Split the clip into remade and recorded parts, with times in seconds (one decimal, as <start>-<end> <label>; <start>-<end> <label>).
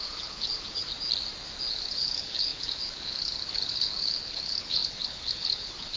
0.0-0.9 remade; 0.9-1.7 recorded; 1.7-6.0 remade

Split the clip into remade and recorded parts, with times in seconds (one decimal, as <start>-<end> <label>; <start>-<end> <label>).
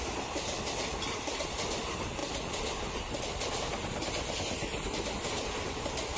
0.0-6.2 recorded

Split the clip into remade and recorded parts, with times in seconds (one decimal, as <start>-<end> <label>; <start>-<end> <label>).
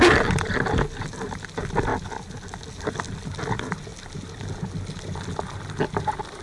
0.0-6.4 recorded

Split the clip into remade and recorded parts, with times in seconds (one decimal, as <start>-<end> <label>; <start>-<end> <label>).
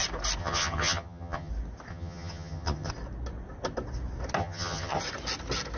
0.0-0.4 recorded; 0.4-1.5 remade; 1.5-1.9 recorded; 1.9-2.9 remade; 2.9-4.4 recorded; 4.4-5.0 remade; 5.0-5.8 recorded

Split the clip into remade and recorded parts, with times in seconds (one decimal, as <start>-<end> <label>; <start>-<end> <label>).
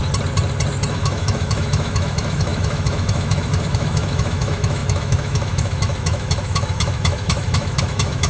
0.0-0.9 recorded; 0.9-8.3 remade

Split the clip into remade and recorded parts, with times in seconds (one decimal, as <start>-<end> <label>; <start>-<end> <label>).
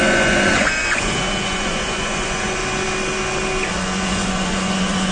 0.0-2.6 remade; 2.6-3.7 recorded; 3.7-5.1 remade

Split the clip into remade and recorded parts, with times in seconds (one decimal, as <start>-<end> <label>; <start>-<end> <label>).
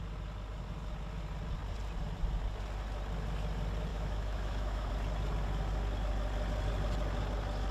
0.0-3.9 recorded; 3.9-4.9 remade; 4.9-7.7 recorded